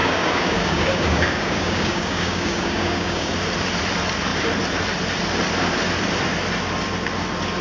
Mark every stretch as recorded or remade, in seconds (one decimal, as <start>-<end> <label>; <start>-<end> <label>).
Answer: 0.0-3.3 remade; 3.3-7.6 recorded

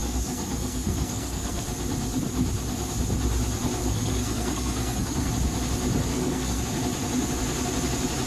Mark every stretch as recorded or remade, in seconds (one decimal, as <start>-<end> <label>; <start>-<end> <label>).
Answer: 0.0-1.6 remade; 1.6-3.8 recorded; 3.8-5.3 remade; 5.3-6.1 recorded; 6.1-6.6 remade; 6.6-8.3 recorded

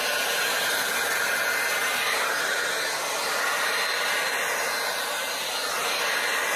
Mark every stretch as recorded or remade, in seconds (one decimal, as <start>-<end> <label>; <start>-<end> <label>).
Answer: 0.0-6.6 recorded

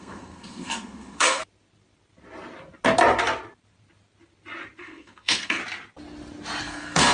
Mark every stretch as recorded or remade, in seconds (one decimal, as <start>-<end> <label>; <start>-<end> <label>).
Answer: 0.0-1.4 remade; 1.4-4.8 recorded; 4.8-5.6 remade; 5.6-6.6 recorded; 6.6-7.1 remade

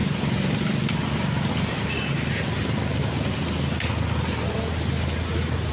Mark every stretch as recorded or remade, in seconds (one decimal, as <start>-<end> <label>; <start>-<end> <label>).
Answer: 0.0-5.7 recorded

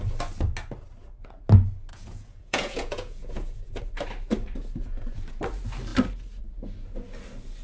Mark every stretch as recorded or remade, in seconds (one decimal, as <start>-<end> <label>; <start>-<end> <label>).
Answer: 0.0-1.9 recorded; 1.9-3.8 remade; 3.8-7.6 recorded

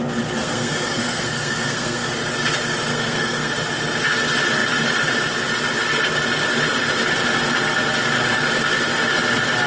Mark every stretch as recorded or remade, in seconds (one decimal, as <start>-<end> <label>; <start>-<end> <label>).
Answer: 0.0-0.4 recorded; 0.4-2.1 remade; 2.1-2.9 recorded; 2.9-3.5 remade; 3.5-9.7 recorded